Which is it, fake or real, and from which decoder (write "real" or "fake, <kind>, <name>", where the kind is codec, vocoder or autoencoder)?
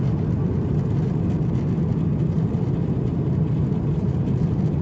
real